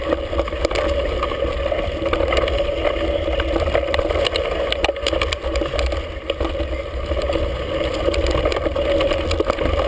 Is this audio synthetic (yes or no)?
no